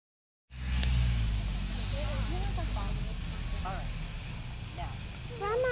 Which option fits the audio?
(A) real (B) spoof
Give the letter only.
A